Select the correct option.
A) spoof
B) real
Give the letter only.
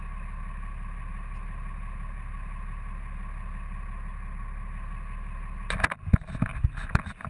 B